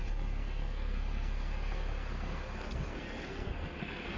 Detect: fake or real fake